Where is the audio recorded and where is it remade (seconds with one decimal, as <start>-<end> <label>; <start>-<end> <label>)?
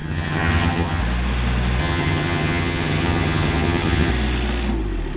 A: 0.0-1.0 remade; 1.0-1.8 recorded; 1.8-4.1 remade; 4.1-5.2 recorded